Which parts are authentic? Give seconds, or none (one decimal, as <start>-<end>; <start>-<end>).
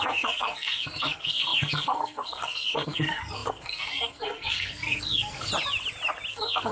5.5-6.3